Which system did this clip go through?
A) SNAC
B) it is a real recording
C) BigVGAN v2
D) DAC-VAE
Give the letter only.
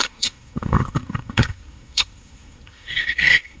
A